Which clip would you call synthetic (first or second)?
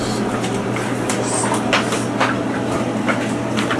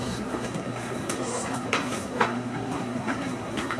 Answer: second